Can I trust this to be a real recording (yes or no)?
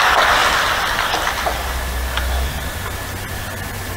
yes